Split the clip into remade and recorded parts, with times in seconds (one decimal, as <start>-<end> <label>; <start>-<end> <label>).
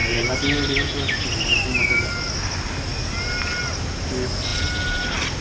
0.0-5.4 recorded